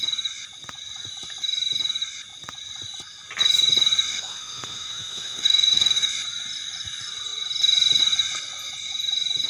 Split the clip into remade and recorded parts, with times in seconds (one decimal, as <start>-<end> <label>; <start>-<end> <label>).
0.0-4.1 recorded; 4.1-6.1 remade; 6.1-9.5 recorded